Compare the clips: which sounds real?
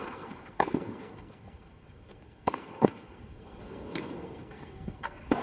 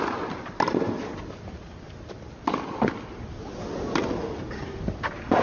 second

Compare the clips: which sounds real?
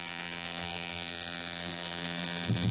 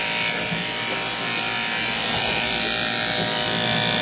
second